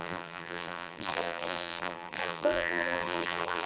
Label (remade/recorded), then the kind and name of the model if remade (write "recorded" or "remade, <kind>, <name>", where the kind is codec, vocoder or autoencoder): remade, vocoder, BigVGAN v2